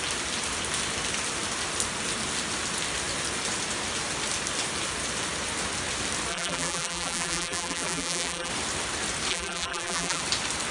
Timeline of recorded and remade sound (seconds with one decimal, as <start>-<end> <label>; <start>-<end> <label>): 0.0-6.3 recorded; 6.3-8.5 remade; 8.5-9.3 recorded; 9.3-10.2 remade; 10.2-10.7 recorded